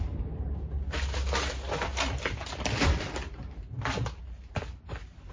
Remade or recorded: recorded